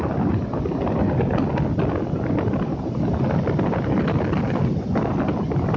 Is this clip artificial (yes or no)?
no